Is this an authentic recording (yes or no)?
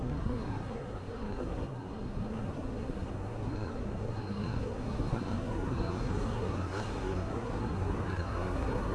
no